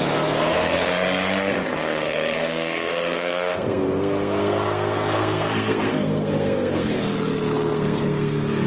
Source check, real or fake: fake